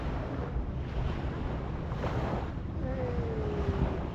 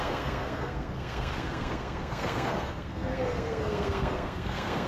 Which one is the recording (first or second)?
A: first